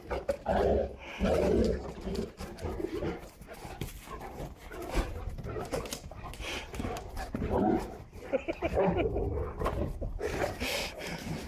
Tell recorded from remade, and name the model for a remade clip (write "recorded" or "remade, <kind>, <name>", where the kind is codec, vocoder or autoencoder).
recorded